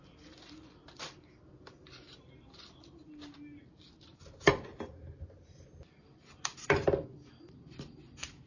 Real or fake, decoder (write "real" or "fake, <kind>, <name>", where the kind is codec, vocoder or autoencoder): real